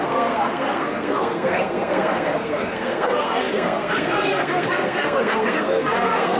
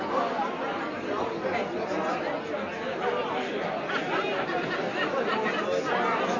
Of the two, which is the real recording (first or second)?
second